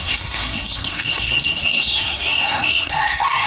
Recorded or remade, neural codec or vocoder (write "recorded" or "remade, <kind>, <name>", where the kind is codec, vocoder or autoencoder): remade, codec, SNAC